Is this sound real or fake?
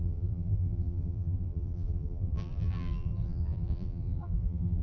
fake